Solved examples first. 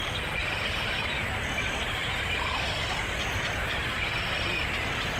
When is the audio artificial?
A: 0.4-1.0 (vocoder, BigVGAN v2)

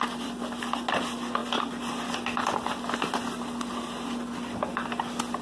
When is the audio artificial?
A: none

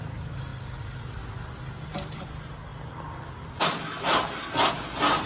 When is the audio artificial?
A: none

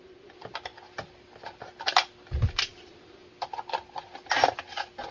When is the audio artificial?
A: none

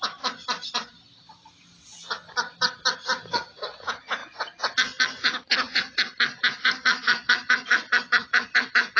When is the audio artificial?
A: 6.9-8.0 (vocoder, BigVGAN v2)

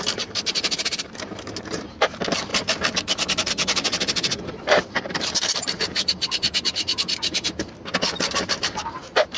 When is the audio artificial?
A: 0.0-2.5 (vocoder, BigVGAN v2); 3.1-9.4